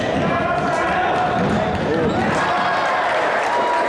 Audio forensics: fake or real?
real